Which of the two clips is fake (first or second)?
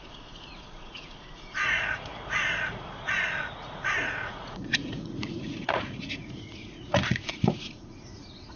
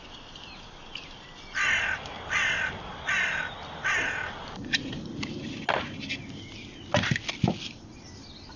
first